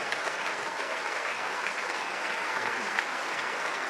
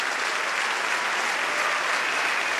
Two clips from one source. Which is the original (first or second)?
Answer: second